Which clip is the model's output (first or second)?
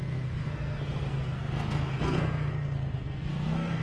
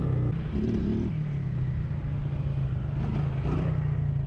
first